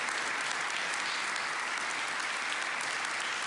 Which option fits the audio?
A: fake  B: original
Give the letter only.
B